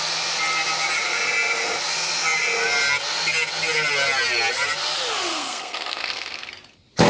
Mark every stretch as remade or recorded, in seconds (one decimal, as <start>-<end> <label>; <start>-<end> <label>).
0.0-5.3 recorded; 5.3-6.5 remade; 6.5-7.1 recorded